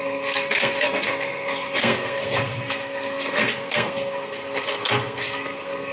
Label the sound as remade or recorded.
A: remade